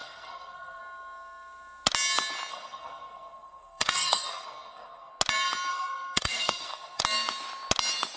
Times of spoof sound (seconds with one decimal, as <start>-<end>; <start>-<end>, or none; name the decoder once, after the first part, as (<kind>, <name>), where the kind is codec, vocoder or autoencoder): 0.0-0.8 (codec, SNAC); 2.5-5.1; 5.7-7.0